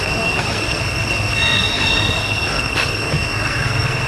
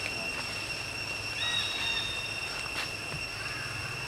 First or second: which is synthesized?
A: first